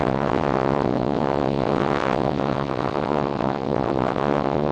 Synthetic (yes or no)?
yes